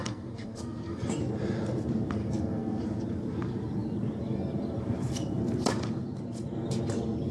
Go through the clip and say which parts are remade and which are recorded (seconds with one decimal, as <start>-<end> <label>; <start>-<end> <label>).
0.0-1.2 remade; 1.2-2.2 recorded; 2.2-2.8 remade; 2.8-7.3 recorded